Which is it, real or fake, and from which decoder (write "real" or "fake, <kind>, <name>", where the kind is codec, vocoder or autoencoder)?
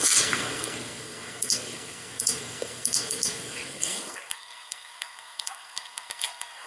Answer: fake, codec, SNAC